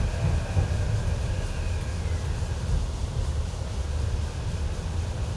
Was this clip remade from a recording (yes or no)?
no